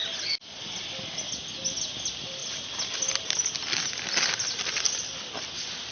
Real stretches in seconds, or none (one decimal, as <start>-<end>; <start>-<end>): 0.0-5.9